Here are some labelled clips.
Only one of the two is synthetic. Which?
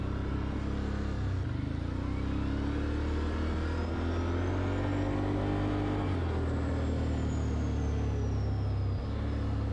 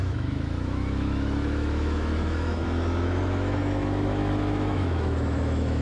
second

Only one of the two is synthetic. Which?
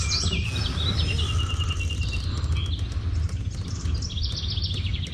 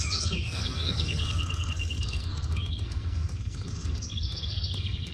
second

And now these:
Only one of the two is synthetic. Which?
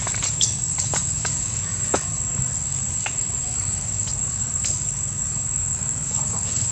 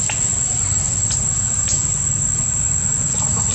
first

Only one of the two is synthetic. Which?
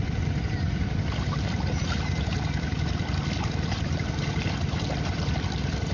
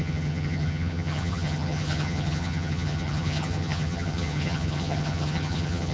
second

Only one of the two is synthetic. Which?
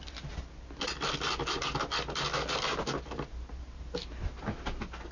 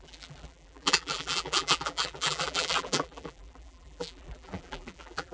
second